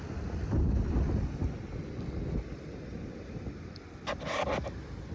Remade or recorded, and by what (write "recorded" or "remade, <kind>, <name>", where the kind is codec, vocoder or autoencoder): recorded